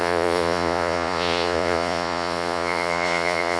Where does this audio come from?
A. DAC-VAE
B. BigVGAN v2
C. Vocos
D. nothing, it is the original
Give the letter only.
C